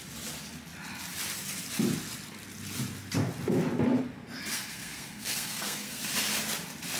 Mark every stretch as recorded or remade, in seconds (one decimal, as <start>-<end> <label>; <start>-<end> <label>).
0.0-4.5 recorded; 4.5-6.0 remade; 6.0-7.0 recorded